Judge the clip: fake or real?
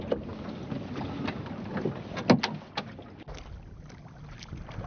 real